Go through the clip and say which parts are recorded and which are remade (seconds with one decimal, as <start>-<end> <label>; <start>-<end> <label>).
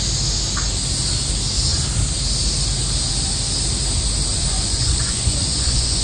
0.0-4.3 recorded; 4.3-6.0 remade